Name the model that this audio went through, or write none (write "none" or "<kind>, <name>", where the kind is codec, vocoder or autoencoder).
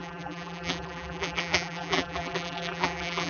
vocoder, BigVGAN v2